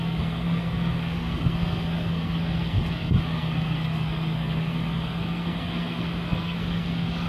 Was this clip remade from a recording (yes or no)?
yes